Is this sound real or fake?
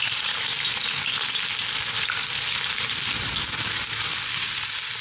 real